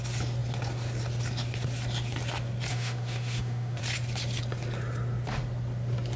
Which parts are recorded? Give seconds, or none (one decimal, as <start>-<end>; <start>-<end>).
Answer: 0.0-2.7; 3.8-6.2